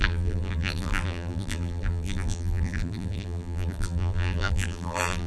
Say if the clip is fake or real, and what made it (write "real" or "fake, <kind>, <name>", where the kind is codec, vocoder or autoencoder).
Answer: fake, vocoder, BigVGAN v2